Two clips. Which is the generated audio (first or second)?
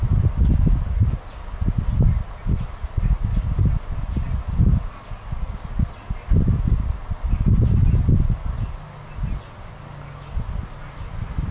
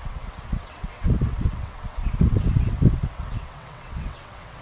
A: second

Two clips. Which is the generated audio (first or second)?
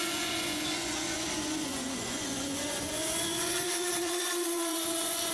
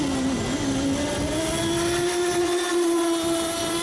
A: first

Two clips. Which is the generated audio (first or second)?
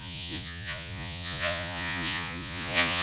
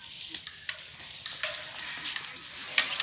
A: first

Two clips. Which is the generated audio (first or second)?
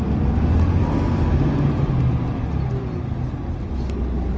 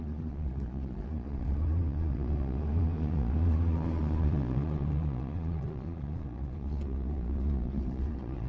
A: second